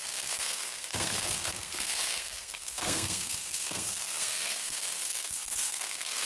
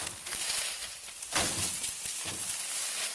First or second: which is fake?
first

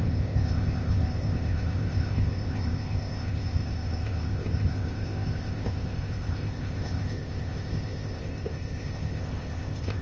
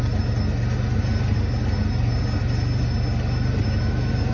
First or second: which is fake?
first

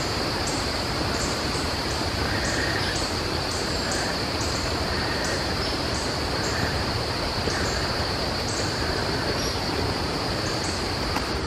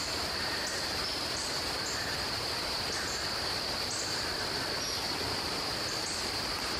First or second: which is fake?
first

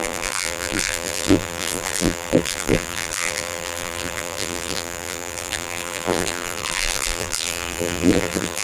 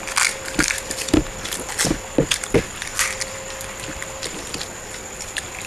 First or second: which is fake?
first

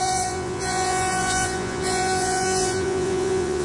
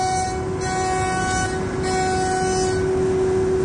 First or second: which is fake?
first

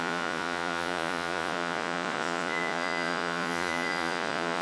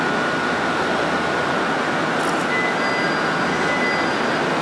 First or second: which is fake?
first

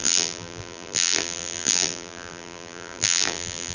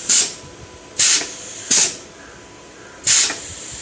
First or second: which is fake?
first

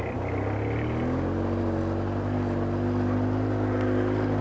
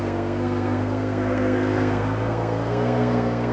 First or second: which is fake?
second